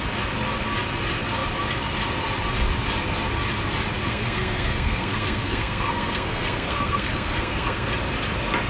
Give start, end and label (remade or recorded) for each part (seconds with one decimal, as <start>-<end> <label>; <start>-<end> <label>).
0.0-4.0 recorded; 4.0-7.9 remade; 7.9-8.7 recorded